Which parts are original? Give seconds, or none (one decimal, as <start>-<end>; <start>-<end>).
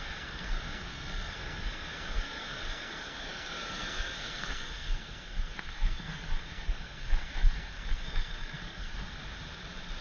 9.2-10.0